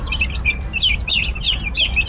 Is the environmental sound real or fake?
real